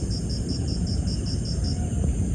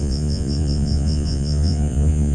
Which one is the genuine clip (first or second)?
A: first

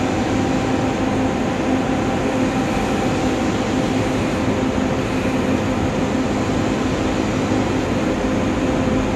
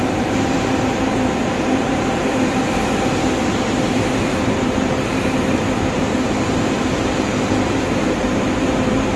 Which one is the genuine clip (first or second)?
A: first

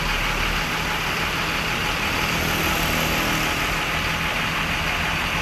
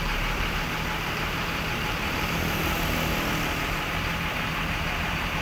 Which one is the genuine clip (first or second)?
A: first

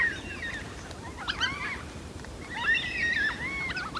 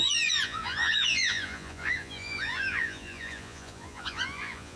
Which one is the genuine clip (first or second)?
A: first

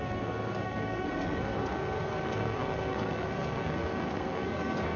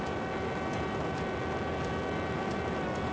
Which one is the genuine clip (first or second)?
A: second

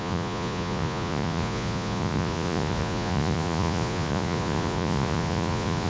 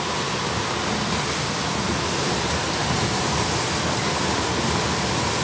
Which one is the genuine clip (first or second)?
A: second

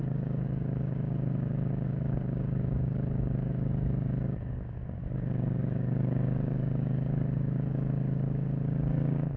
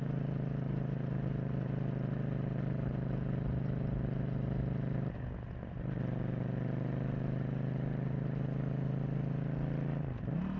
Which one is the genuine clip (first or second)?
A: second